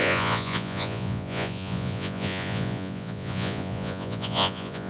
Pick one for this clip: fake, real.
fake